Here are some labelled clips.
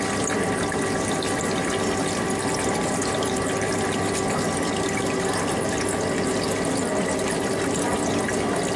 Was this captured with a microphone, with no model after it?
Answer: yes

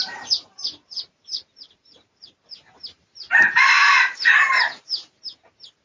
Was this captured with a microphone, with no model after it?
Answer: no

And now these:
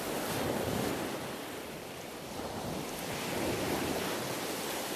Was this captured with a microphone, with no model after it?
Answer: yes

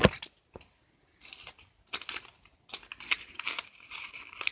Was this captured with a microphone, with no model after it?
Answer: yes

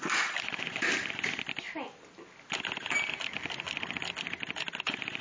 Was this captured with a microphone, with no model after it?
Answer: yes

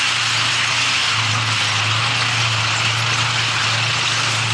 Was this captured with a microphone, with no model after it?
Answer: yes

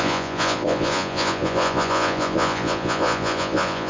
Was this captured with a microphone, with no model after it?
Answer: no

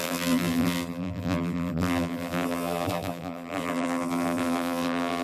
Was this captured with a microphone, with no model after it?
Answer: no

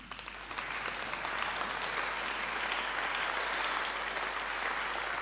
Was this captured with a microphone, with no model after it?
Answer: yes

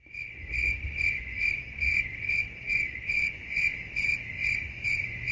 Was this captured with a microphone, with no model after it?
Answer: no